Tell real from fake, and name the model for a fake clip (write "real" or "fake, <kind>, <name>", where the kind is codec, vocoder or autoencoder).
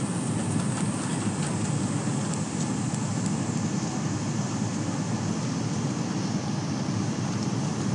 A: real